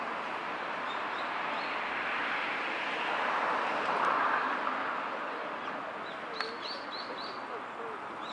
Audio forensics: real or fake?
real